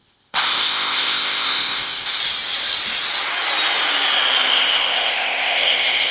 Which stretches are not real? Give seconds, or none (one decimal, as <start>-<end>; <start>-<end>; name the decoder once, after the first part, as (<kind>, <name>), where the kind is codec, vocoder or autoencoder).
0.0-2.2 (codec, ZipCodec); 4.5-6.1